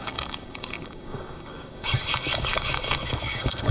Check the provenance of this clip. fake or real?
fake